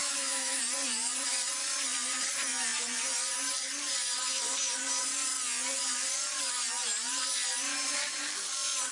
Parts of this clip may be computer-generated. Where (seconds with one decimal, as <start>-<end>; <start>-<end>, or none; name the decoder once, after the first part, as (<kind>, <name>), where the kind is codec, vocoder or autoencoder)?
0.0-0.6 (autoencoder, DAC-VAE)